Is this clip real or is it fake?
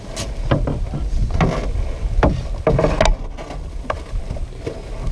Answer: real